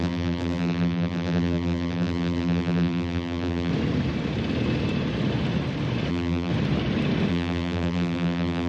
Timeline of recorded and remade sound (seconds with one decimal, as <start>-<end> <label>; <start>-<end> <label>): 0.0-3.7 remade; 3.7-6.1 recorded; 6.1-6.5 remade; 6.5-7.3 recorded; 7.3-8.7 remade

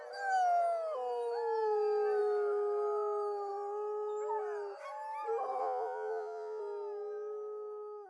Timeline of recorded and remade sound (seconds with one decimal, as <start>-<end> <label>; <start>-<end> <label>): 0.0-5.6 recorded; 5.6-6.6 remade; 6.6-8.1 recorded

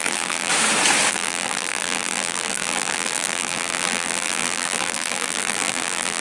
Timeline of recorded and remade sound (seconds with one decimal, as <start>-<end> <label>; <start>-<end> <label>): 0.0-0.5 remade; 0.5-1.1 recorded; 1.1-6.2 remade